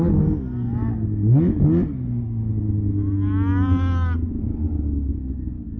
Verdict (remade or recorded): recorded